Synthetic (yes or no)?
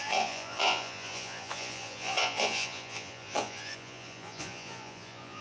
yes